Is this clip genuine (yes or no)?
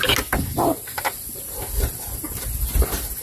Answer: yes